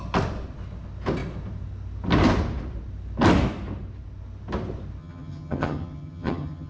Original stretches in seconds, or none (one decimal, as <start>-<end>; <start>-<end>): 0.0-5.0